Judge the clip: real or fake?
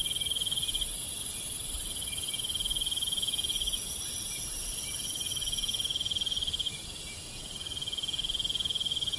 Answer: real